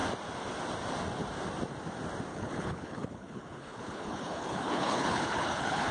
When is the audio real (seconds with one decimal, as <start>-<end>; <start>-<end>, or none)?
0.0-2.3